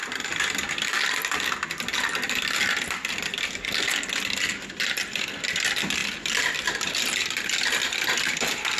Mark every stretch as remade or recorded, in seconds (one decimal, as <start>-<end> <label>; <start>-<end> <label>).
0.0-8.8 recorded